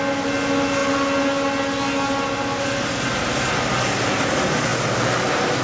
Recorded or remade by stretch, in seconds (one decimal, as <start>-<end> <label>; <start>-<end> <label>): 0.0-5.6 recorded

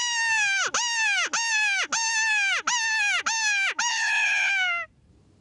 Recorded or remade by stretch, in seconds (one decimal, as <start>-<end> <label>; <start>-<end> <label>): 0.0-3.9 recorded; 3.9-4.5 remade; 4.5-5.4 recorded

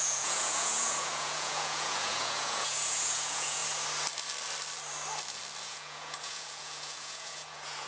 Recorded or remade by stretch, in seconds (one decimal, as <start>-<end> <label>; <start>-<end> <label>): 0.0-3.6 remade; 3.6-5.6 recorded; 5.6-7.9 remade

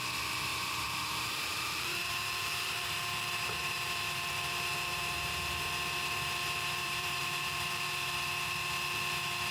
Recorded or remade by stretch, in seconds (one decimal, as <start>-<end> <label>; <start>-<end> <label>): 0.0-0.5 recorded; 0.5-5.6 remade; 5.6-6.8 recorded; 6.8-8.1 remade; 8.1-9.5 recorded

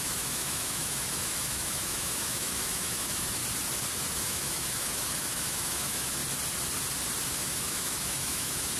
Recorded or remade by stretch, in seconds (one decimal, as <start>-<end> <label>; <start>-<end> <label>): 0.0-3.4 remade; 3.4-4.1 recorded; 4.1-6.2 remade; 6.2-7.3 recorded; 7.3-8.8 remade

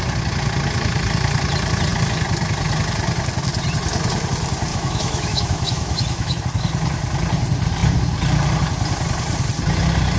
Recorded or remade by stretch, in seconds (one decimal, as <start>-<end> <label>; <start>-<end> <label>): 0.0-4.7 recorded; 4.7-6.4 remade; 6.4-10.2 recorded

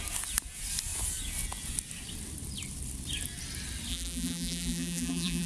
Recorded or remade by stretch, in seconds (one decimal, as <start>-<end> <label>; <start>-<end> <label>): 0.0-3.9 recorded; 3.9-5.5 remade